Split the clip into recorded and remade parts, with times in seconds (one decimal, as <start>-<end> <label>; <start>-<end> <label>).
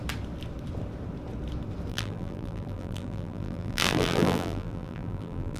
0.0-1.9 recorded; 1.9-5.6 remade